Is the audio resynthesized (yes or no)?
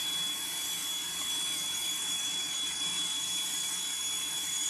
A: yes